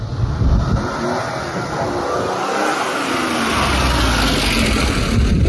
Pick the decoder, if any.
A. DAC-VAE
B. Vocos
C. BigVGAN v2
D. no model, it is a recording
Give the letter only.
D